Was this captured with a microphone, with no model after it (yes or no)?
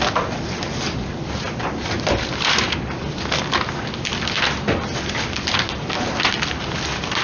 yes